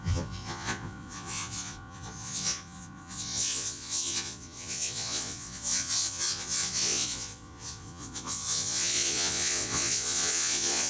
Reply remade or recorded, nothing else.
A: remade